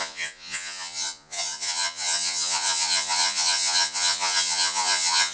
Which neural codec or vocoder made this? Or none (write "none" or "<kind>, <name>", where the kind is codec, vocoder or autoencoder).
vocoder, Vocos